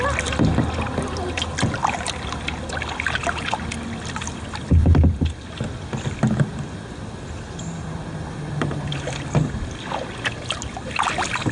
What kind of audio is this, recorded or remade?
recorded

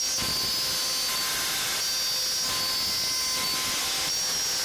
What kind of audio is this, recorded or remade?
recorded